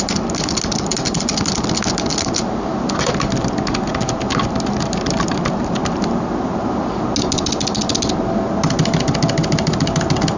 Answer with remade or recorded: recorded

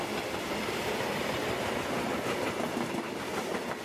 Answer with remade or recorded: recorded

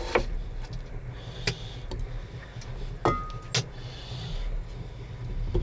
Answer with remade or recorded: recorded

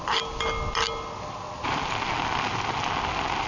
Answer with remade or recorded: recorded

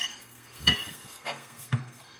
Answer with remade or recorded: remade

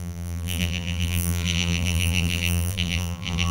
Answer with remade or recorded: remade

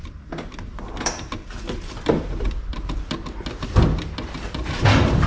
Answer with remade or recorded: remade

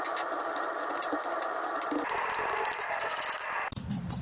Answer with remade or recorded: recorded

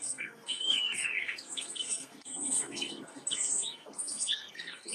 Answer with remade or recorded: remade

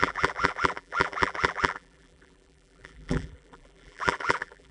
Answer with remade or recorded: remade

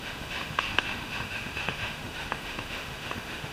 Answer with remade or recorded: remade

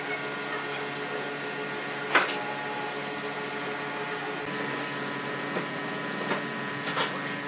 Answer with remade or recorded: recorded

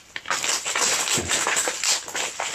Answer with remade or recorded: recorded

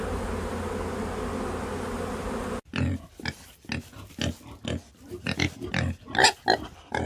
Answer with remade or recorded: recorded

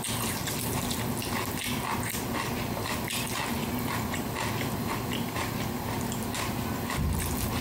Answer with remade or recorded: recorded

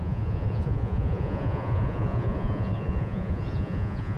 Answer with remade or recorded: remade